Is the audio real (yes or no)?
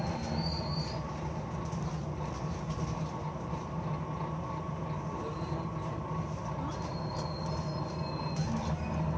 yes